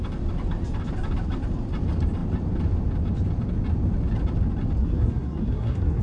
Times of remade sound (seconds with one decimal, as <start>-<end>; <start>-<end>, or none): 4.8-6.0